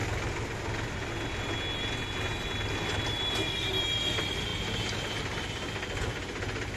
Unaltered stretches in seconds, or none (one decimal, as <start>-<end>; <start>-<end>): 0.0-6.8